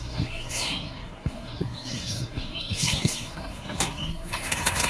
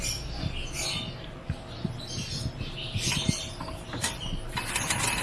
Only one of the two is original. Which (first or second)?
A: second